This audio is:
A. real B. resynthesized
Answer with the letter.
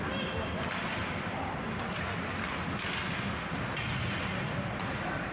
A